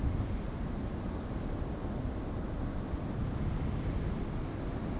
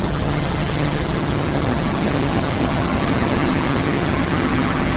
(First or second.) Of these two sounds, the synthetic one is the second